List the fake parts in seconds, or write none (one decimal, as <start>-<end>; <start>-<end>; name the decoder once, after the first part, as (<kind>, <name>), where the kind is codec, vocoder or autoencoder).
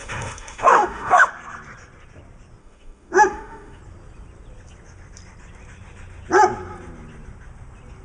0.0-1.3 (autoencoder, DAC-VAE); 2.6-3.8